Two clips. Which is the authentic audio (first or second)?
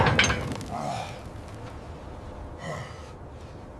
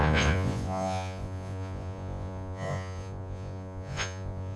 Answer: first